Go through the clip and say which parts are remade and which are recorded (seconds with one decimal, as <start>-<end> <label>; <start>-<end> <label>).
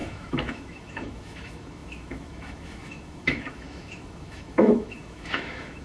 0.0-5.8 remade